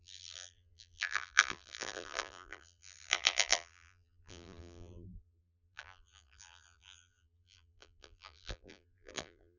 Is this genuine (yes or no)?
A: no